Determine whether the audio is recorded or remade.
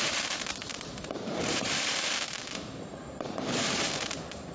remade